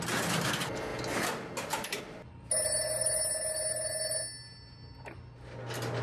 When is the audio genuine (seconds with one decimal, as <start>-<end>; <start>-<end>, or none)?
0.0-6.0